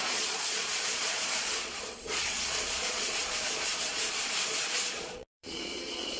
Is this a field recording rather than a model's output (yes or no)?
no